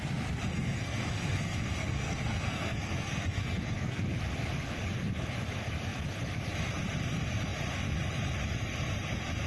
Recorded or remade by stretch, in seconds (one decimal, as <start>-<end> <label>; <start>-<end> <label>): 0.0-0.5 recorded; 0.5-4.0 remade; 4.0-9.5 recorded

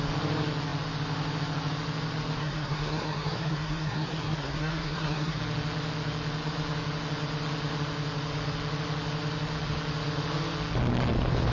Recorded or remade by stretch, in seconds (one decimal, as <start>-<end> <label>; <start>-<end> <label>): 0.0-2.4 recorded; 2.4-5.4 remade; 5.4-11.5 recorded

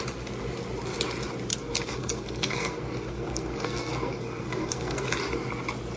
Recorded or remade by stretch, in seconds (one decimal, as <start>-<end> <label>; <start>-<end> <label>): 0.0-1.5 recorded; 1.5-5.1 remade; 5.1-6.0 recorded

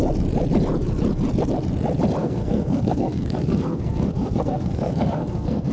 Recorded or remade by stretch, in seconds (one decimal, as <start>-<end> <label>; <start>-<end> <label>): 0.0-2.2 recorded; 2.2-5.7 remade

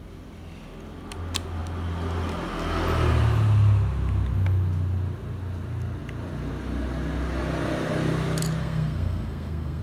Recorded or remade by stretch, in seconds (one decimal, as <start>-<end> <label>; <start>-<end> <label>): 0.0-8.6 recorded; 8.6-9.8 remade

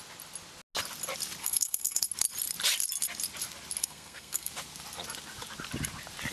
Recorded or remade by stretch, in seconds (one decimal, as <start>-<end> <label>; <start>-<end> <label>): 0.0-1.4 recorded; 1.4-2.1 remade; 2.1-3.8 recorded; 3.8-4.5 remade; 4.5-6.3 recorded

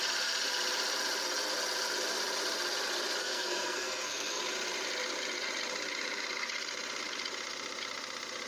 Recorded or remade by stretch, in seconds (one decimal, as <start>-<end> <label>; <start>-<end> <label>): 0.0-3.2 recorded; 3.2-4.4 remade; 4.4-8.5 recorded